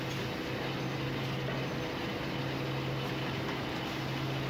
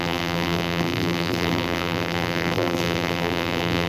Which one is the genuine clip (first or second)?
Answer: first